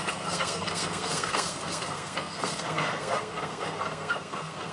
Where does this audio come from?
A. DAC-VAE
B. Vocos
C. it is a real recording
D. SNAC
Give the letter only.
D